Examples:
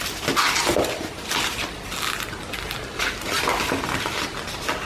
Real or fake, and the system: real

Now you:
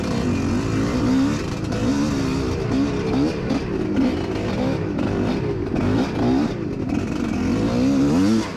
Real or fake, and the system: real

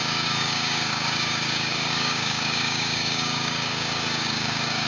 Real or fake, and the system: fake, codec, DAC